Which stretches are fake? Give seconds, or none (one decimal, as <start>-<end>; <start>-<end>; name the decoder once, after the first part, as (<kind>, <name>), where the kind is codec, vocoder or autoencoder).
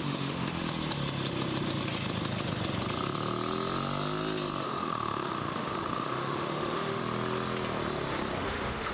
0.0-0.6 (autoencoder, DAC-VAE); 4.6-7.0; 8.4-8.9